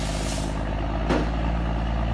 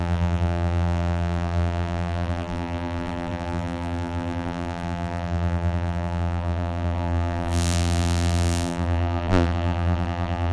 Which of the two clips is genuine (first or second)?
first